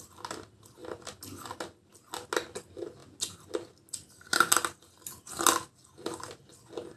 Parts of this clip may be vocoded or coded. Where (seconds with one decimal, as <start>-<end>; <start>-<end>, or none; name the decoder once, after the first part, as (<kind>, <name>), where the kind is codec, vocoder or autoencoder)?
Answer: none

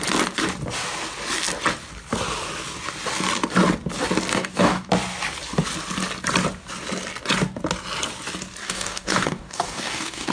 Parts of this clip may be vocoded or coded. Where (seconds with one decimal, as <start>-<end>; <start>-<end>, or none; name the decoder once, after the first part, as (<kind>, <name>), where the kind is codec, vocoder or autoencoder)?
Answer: 4.3-4.9 (codec, DAC); 8.6-10.3

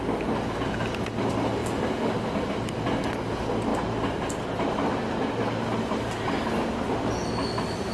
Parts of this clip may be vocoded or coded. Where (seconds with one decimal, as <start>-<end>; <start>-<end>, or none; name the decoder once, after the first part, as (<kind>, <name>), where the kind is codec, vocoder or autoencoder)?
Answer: none

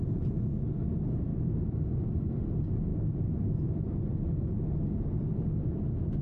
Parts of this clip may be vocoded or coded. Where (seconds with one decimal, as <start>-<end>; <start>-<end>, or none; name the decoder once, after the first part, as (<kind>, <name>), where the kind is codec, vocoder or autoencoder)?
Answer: 1.3-2.3 (vocoder, BigVGAN v2)

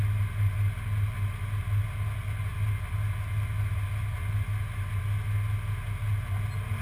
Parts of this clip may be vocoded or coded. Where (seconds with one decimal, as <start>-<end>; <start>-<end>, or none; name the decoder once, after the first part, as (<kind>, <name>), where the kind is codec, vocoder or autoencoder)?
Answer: none

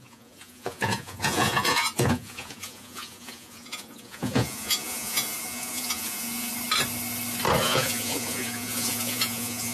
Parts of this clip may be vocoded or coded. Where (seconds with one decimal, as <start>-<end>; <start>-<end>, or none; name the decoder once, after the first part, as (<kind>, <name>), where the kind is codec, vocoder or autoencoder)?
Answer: 0.0-6.5 (vocoder, Vocos); 7.6-9.7